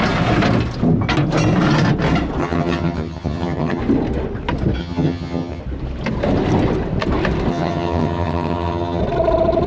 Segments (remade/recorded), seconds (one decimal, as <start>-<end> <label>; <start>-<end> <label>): 0.0-2.4 recorded; 2.4-3.8 remade; 3.8-4.8 recorded; 4.8-5.6 remade; 5.6-7.5 recorded; 7.5-9.0 remade; 9.0-9.7 recorded